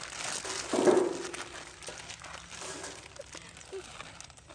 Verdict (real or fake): real